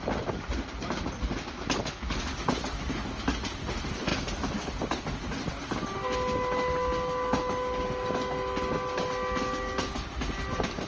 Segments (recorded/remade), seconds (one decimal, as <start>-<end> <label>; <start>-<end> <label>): 0.0-10.9 recorded